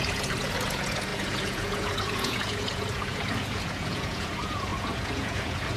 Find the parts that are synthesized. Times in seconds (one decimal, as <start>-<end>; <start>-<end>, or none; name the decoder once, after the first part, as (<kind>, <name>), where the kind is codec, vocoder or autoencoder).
0.0-5.8 (vocoder, Vocos)